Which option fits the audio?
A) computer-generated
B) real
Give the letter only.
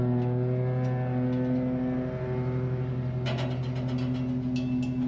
B